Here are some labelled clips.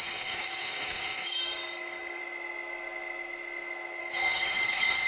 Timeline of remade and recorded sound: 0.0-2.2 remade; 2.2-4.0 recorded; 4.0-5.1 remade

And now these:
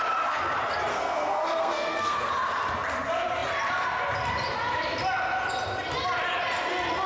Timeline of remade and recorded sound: 0.0-0.9 recorded; 0.9-2.3 remade; 2.3-7.1 recorded

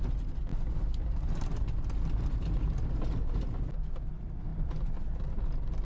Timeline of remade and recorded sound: 0.0-5.8 recorded

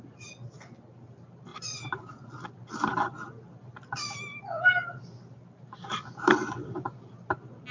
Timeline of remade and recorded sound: 0.0-1.5 recorded; 1.5-2.1 remade; 2.1-7.7 recorded

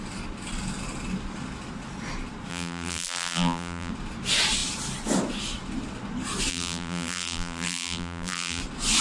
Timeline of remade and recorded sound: 0.0-2.5 recorded; 2.5-3.9 remade; 3.9-6.5 recorded; 6.5-8.6 remade; 8.6-9.0 recorded

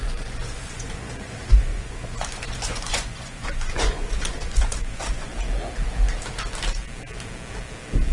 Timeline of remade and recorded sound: 0.0-5.3 remade; 5.3-8.1 recorded